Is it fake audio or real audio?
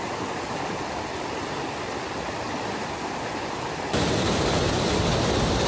real